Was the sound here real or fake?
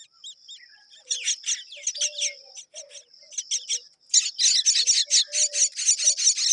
real